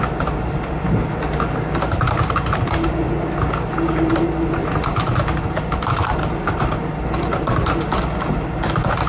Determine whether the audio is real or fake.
real